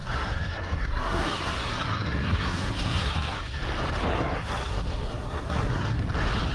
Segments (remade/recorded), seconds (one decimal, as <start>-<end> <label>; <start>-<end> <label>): 0.0-3.6 remade; 3.6-4.1 recorded; 4.1-6.0 remade; 6.0-6.5 recorded